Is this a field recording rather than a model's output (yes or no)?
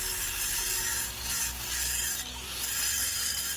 yes